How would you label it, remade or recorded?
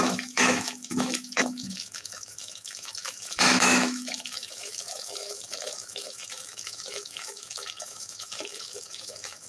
remade